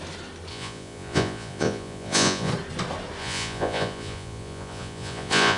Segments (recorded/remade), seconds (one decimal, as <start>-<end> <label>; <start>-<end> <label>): 0.0-0.5 recorded; 0.5-2.5 remade; 2.5-3.2 recorded; 3.2-5.6 remade